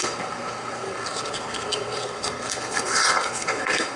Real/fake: fake